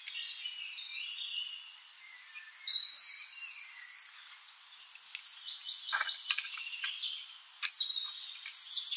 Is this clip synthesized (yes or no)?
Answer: no